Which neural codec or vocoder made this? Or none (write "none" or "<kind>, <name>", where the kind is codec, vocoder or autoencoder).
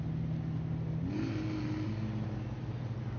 none